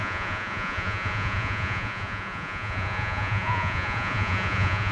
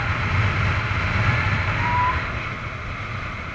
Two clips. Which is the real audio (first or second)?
second